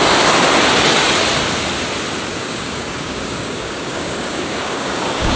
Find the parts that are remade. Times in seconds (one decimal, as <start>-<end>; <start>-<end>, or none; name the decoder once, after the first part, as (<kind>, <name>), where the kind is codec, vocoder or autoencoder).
2.4-5.4 (codec, DAC)